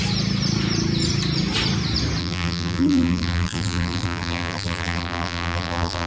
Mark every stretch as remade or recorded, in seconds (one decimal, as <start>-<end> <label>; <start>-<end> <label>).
0.0-2.2 recorded; 2.2-6.1 remade